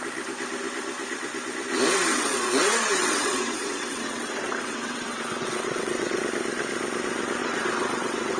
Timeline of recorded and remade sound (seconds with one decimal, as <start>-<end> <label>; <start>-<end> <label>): 0.0-2.1 recorded; 2.1-6.2 remade; 6.2-7.4 recorded; 7.4-8.4 remade